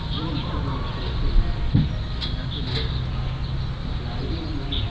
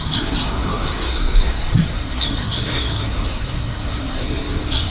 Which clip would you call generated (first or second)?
second